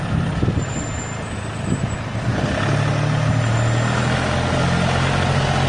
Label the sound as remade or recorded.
recorded